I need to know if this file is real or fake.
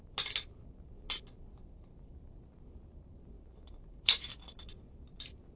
real